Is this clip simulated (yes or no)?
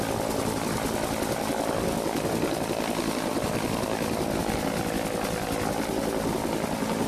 no